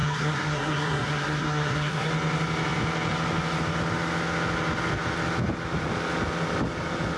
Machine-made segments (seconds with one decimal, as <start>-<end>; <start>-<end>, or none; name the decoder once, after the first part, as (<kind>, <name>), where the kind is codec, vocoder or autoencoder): 0.0-2.1 (codec, SNAC)